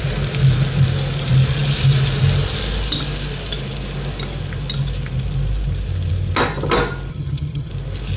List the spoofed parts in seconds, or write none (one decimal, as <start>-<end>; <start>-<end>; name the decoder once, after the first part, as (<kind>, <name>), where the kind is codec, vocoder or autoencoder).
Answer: 7.1-7.7 (vocoder, HiFi-GAN)